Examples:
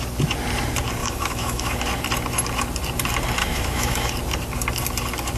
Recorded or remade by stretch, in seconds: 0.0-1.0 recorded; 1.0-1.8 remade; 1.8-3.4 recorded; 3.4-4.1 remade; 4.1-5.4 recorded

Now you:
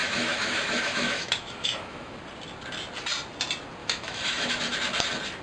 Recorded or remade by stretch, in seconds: 0.0-2.2 remade; 2.2-3.8 recorded; 3.8-4.6 remade; 4.6-5.4 recorded

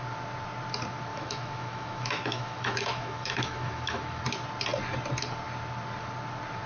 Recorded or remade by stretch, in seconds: 0.0-1.1 recorded; 1.1-4.2 remade; 4.2-6.7 recorded

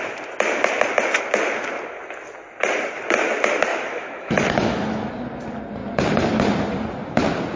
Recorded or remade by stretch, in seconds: 0.0-3.7 recorded; 3.7-5.1 remade; 5.1-7.6 recorded

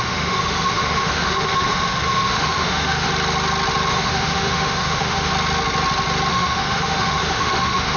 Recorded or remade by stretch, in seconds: 0.0-3.1 remade; 3.1-3.9 recorded; 3.9-5.3 remade; 5.3-6.3 recorded; 6.3-8.0 remade

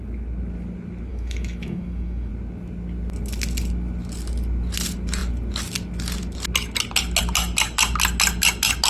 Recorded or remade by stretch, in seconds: 0.0-1.1 recorded; 1.1-2.3 remade; 2.3-8.9 recorded

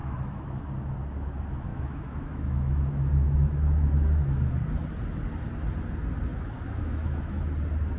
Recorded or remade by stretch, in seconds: 0.0-0.6 remade; 0.6-1.7 recorded; 1.7-4.5 remade; 4.5-6.3 recorded; 6.3-7.4 remade; 7.4-8.0 recorded

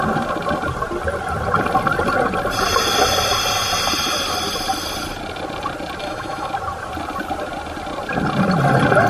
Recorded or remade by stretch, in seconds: 0.0-6.0 recorded; 6.0-6.5 remade; 6.5-9.1 recorded